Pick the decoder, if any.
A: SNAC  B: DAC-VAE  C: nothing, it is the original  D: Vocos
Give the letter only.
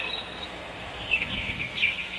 A